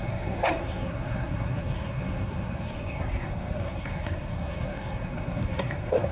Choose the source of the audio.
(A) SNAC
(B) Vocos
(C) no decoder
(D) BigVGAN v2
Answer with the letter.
A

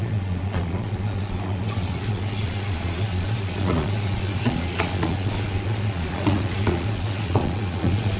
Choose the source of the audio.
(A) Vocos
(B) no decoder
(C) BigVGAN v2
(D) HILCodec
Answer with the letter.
A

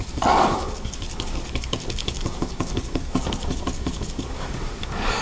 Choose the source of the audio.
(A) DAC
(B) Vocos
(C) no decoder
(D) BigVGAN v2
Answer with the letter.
A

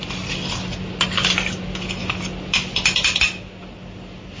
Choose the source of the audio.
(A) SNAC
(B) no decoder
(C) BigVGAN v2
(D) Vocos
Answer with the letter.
B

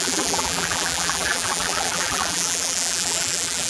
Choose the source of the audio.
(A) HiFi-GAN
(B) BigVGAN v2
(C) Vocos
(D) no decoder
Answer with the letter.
B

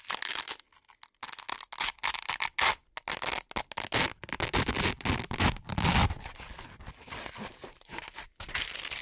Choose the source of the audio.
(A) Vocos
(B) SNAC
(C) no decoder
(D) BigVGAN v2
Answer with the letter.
C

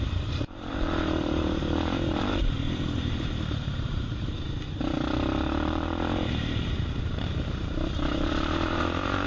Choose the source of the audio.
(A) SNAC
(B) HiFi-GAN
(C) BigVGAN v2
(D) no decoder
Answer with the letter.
C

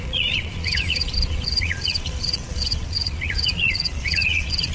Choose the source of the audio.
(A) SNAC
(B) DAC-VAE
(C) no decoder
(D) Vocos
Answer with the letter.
D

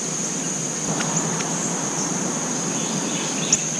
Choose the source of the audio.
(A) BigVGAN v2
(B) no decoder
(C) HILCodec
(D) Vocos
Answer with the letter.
B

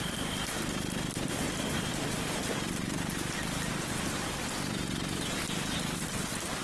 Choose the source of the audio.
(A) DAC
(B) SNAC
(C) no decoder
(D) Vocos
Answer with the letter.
C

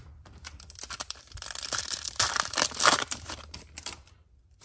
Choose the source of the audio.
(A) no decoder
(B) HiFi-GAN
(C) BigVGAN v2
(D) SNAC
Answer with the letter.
C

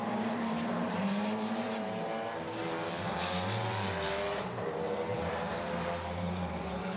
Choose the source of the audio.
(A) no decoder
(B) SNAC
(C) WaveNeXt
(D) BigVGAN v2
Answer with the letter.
D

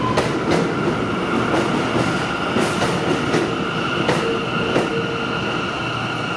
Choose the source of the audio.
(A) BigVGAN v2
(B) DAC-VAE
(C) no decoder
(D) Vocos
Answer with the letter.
C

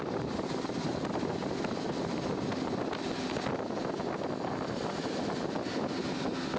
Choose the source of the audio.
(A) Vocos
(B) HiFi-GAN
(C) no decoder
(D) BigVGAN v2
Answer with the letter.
C